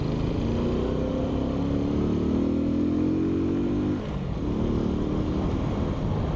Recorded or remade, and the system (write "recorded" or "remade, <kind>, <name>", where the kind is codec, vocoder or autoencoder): recorded